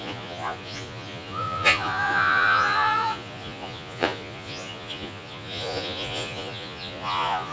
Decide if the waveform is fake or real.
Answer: fake